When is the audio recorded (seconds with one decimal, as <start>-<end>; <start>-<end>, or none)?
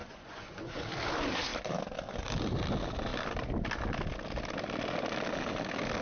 0.8-6.0